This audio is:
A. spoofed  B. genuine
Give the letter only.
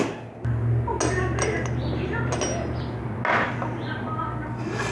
B